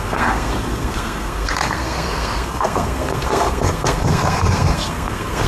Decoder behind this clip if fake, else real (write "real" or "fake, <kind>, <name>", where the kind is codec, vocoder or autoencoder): fake, codec, SNAC